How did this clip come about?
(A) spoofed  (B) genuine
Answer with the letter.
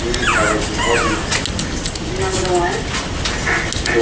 B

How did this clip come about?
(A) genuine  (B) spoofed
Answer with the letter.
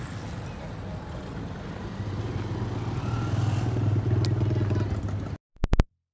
A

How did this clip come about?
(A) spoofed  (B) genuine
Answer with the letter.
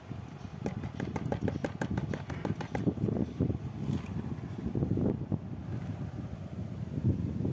B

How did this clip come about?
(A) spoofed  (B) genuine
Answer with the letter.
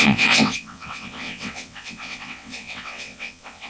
A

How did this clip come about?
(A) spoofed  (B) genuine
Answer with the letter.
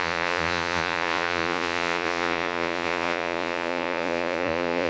A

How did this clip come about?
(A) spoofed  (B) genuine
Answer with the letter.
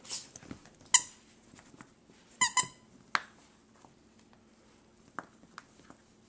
B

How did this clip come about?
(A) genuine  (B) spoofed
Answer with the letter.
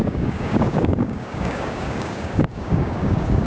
B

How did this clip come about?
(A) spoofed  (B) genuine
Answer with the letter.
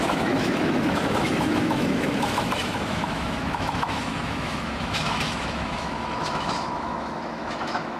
A